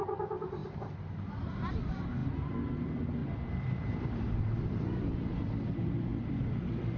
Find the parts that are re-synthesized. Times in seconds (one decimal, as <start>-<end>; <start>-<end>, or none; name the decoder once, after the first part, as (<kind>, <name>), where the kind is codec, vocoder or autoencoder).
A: 0.6-1.7 (vocoder, BigVGAN v2); 3.2-5.4; 6.1-7.0